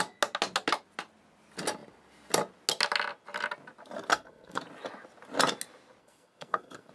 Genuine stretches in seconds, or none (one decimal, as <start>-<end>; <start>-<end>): 0.0-4.1; 4.6-6.0